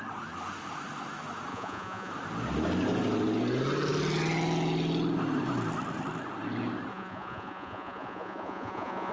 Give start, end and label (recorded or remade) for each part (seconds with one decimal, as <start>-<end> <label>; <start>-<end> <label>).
0.0-1.5 recorded; 1.5-2.1 remade; 2.1-6.9 recorded; 6.9-9.1 remade